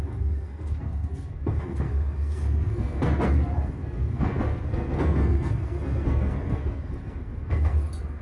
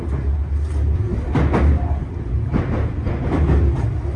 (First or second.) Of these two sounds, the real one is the second